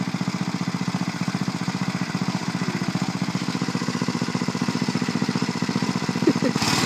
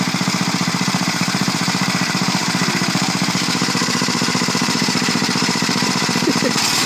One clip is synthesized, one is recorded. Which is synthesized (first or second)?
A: second